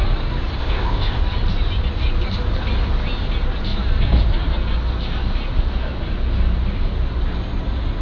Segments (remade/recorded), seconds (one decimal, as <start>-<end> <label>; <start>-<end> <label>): 0.0-0.6 recorded; 0.6-1.2 remade; 1.2-8.0 recorded